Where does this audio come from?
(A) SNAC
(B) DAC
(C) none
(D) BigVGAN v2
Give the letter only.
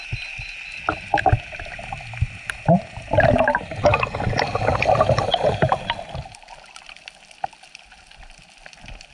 C